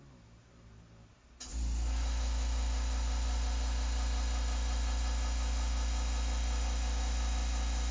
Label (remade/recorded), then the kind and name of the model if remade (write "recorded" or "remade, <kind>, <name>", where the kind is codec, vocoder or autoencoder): recorded